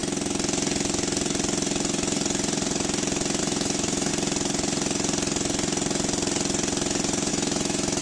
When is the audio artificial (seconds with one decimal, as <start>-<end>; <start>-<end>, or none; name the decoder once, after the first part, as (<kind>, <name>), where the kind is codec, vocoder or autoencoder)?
3.4-4.1 (autoencoder, DAC-VAE); 7.3-8.0